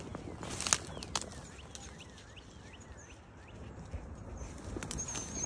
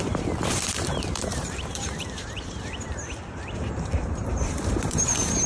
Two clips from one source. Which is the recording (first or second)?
first